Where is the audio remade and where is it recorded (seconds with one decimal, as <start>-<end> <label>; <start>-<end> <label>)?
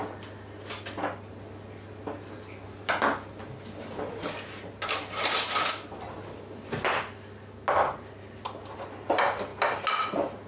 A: 0.0-10.5 recorded